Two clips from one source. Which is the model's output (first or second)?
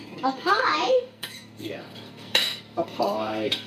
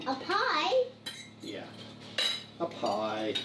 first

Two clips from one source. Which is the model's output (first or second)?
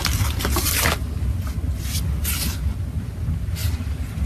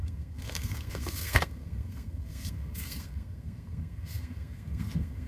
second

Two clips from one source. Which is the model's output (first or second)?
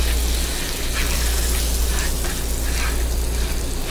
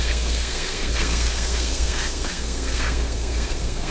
second